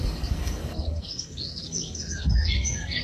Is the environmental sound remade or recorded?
remade